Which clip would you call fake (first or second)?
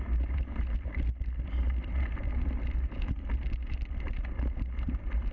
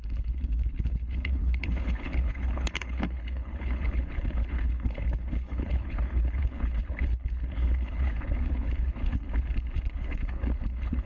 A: second